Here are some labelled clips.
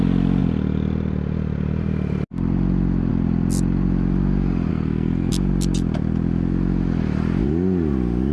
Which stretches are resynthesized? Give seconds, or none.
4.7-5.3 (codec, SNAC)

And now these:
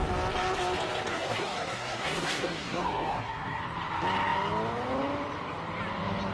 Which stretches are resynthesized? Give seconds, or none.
1.1-3.6 (codec, SNAC)